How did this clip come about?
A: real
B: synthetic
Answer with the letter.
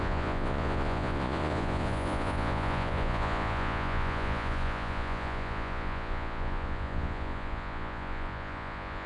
B